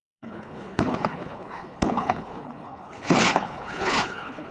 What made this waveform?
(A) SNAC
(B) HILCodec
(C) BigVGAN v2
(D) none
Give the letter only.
B